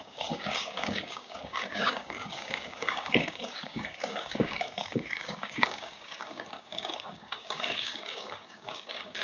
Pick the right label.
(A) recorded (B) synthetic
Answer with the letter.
B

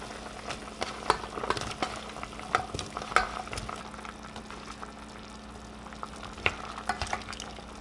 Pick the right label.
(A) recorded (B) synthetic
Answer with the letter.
A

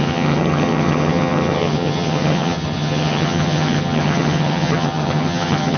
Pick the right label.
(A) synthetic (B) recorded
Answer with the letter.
A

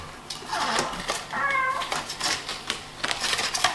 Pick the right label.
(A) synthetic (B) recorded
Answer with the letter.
B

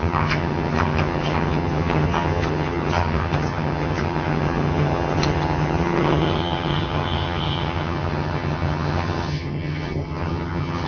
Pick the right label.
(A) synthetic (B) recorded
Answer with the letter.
A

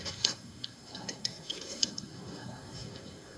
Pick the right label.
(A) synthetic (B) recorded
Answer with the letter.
A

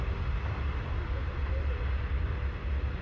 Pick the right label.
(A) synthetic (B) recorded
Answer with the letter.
B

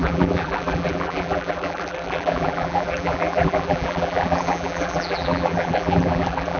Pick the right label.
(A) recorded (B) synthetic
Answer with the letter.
B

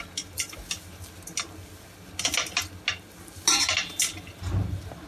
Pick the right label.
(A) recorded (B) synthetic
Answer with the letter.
A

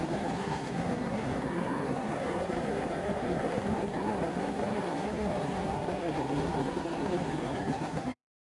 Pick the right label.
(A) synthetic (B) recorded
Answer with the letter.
A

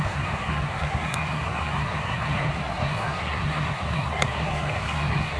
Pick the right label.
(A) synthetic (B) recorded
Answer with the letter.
A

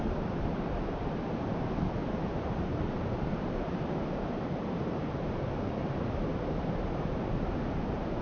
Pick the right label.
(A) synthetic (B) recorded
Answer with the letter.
A